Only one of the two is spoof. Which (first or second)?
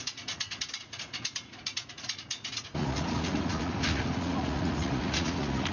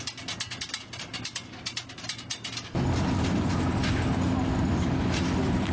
first